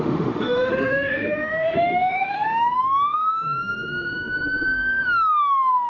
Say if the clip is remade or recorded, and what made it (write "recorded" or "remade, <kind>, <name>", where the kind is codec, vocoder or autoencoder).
remade, autoencoder, DAC-VAE